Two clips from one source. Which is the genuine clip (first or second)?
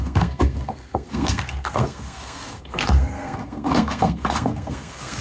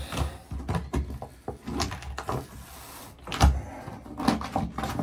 second